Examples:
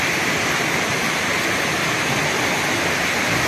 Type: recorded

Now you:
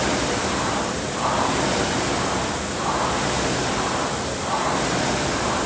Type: recorded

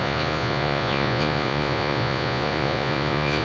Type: remade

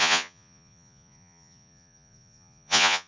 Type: remade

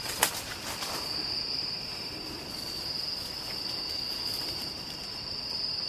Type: recorded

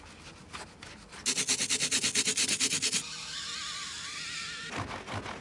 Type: recorded